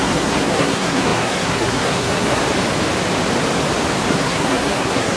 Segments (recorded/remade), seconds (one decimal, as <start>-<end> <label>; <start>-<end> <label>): 0.0-2.4 remade; 2.4-4.1 recorded; 4.1-5.2 remade